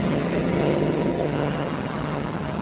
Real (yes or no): no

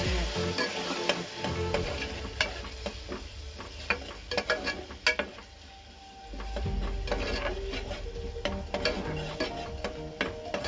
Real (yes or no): yes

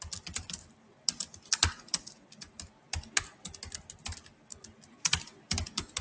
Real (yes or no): yes